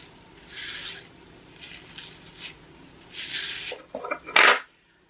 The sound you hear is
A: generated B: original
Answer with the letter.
B